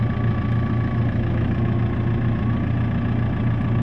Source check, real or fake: real